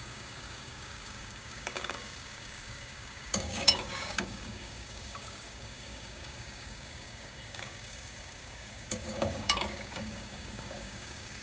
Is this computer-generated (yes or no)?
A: yes